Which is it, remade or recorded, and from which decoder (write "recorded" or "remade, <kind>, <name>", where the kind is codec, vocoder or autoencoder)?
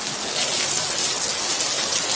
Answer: recorded